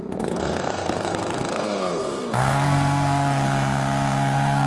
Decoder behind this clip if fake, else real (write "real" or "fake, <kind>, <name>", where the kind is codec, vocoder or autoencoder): fake, codec, SNAC